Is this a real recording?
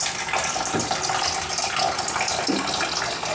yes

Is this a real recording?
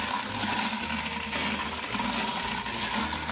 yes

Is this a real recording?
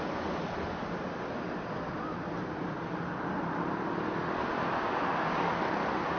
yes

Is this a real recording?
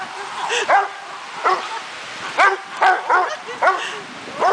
yes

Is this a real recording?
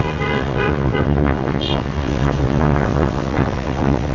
no